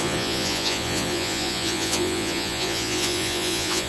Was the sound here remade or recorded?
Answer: remade